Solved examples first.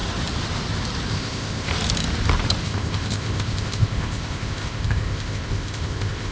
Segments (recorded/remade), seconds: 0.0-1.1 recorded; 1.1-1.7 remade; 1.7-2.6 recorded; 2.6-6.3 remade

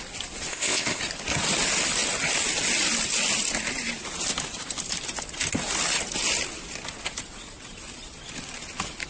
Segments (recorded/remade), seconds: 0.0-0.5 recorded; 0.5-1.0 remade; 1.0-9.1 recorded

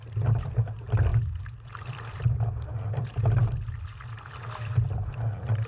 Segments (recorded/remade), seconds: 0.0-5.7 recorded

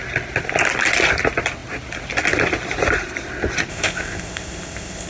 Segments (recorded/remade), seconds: 0.0-3.7 recorded; 3.7-5.1 remade

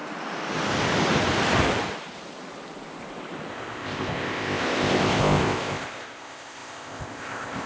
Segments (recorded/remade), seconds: 0.0-3.5 recorded; 3.5-7.7 remade

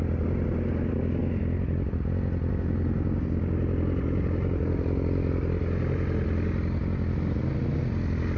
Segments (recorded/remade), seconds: 0.0-8.4 recorded

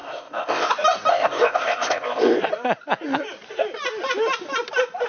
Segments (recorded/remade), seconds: 0.0-0.7 remade; 0.7-1.1 recorded; 1.1-2.4 remade; 2.4-5.1 recorded

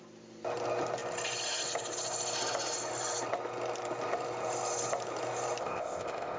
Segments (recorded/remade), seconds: 0.0-5.6 recorded; 5.6-6.4 remade